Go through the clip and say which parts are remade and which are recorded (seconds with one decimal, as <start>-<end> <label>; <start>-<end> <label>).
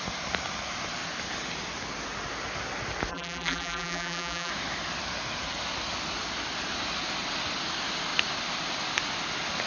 0.0-3.1 recorded; 3.1-4.5 remade; 4.5-9.7 recorded